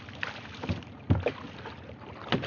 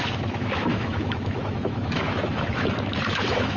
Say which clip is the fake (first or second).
second